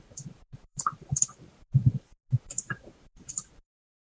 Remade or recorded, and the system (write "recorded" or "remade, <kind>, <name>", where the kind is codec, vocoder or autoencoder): remade, vocoder, BigVGAN v2